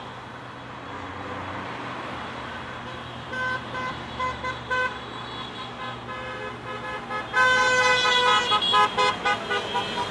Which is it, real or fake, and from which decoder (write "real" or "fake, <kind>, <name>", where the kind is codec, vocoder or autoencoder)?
real